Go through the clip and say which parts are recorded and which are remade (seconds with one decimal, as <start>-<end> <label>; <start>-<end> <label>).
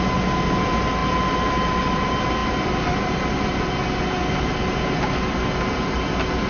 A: 0.0-6.5 recorded